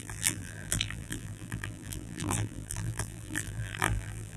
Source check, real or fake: fake